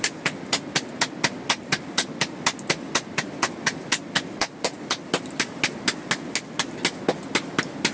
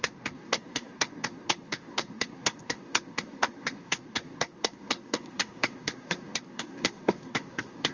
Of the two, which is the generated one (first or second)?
second